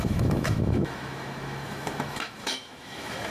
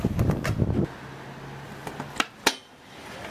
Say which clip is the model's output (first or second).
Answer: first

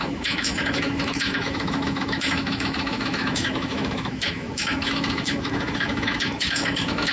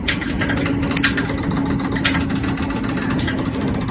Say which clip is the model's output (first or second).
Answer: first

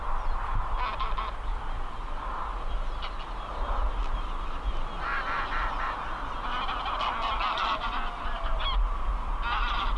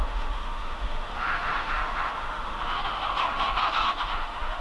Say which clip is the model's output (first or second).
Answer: second